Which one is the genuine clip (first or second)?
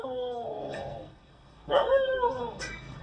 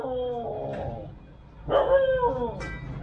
second